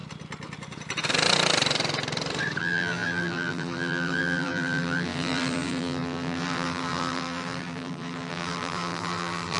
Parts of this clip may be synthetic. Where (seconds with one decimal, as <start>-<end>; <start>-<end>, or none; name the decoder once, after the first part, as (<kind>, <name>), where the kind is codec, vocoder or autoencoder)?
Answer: 2.6-9.6 (vocoder, BigVGAN v2)